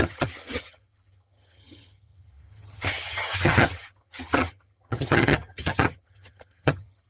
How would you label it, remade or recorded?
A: remade